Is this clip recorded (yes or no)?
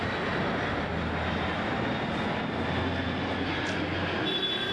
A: yes